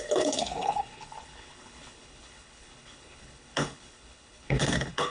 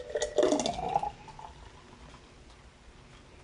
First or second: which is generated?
first